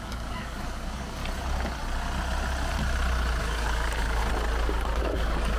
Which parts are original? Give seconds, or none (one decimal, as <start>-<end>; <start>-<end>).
1.2-3.4; 4.2-5.0